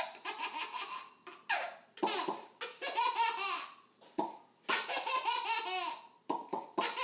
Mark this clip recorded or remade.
recorded